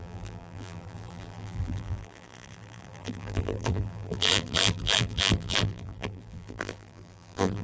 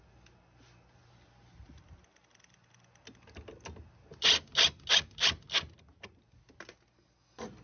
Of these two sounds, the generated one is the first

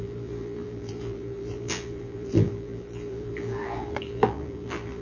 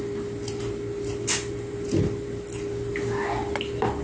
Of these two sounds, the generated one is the first